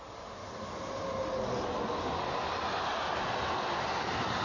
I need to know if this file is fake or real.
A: real